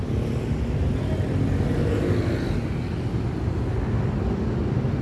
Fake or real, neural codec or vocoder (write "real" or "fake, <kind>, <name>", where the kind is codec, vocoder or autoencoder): real